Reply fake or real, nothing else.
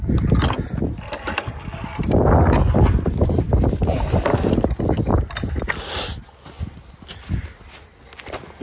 real